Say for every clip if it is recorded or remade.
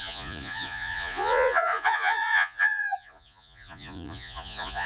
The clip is remade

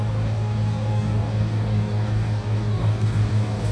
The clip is remade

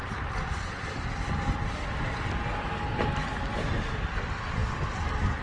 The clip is recorded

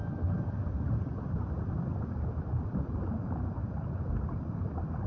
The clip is recorded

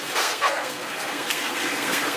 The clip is remade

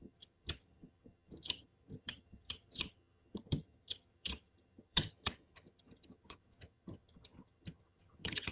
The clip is remade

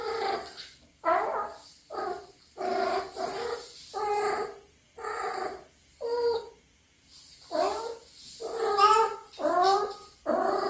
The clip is recorded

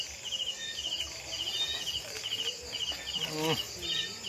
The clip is recorded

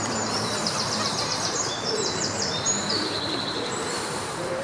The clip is remade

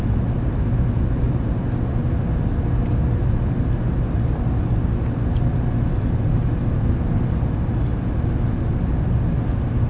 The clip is recorded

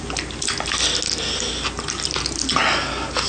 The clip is recorded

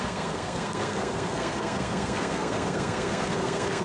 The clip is remade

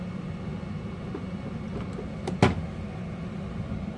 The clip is recorded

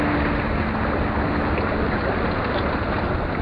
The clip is recorded